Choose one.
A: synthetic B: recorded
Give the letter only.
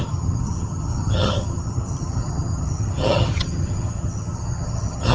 A